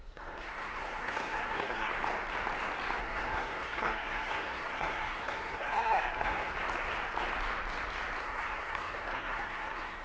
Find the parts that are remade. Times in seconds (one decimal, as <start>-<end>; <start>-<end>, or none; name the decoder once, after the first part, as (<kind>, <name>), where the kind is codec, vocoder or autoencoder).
0.0-1.9 (codec, SNAC); 3.0-6.5; 8.2-10.0